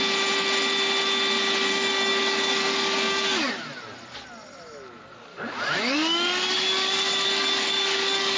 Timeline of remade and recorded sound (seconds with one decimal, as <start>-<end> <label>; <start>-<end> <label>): 0.0-1.7 recorded; 1.7-3.5 remade; 3.5-5.3 recorded; 5.3-8.4 remade